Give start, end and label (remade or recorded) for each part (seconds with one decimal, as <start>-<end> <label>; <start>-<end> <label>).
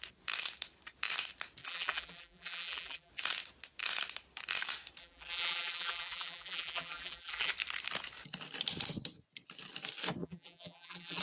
0.0-1.6 recorded; 1.6-3.1 remade; 3.1-5.0 recorded; 5.0-7.5 remade; 7.5-10.2 recorded; 10.2-11.2 remade